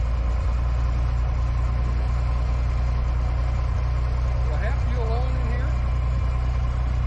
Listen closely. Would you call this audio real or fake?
real